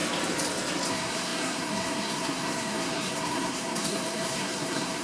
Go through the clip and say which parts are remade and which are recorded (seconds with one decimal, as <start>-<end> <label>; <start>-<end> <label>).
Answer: 0.0-0.9 recorded; 0.9-5.0 remade